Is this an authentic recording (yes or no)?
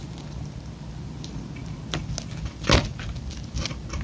yes